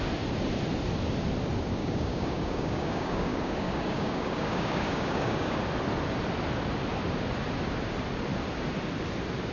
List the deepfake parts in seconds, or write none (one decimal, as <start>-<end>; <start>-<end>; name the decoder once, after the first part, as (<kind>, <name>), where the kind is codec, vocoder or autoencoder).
1.8-5.6 (codec, DAC)